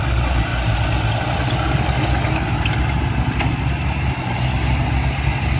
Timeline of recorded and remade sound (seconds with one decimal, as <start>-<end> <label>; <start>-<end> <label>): 0.0-5.6 recorded